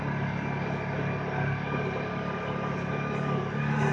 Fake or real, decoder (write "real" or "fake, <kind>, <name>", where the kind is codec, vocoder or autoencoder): real